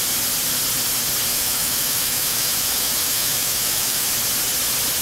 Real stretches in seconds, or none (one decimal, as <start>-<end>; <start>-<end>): 0.0-1.3; 4.1-5.0